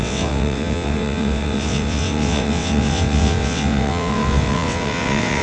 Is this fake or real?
fake